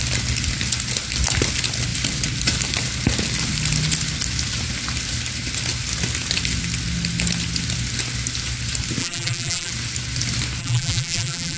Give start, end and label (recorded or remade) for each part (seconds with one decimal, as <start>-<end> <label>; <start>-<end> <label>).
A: 0.0-9.0 recorded; 9.0-9.7 remade; 9.7-10.6 recorded; 10.6-11.6 remade